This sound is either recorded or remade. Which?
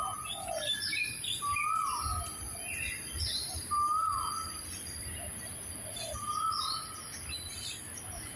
recorded